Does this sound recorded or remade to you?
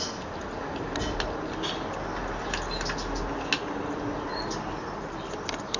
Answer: recorded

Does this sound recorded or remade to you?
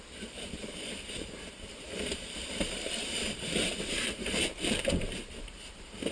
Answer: remade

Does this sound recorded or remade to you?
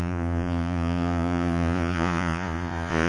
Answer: remade